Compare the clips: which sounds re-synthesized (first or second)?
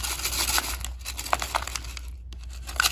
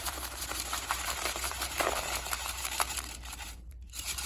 second